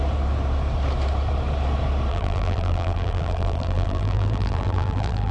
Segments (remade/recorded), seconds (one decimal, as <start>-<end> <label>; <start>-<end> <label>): 0.0-2.1 recorded; 2.1-5.3 remade